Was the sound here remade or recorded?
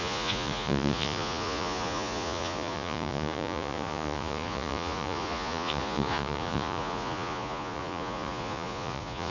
remade